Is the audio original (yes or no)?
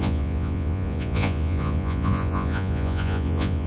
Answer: no